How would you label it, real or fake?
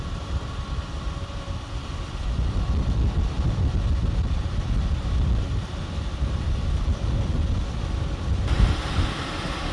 fake